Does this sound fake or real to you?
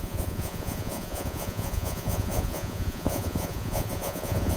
fake